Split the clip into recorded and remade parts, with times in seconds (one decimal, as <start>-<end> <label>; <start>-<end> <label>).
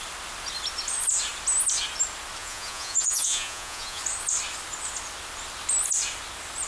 0.0-2.4 recorded; 2.4-4.0 remade; 4.0-6.7 recorded